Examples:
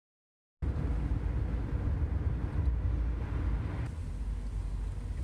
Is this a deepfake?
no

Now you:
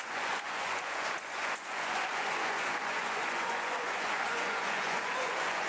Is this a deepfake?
yes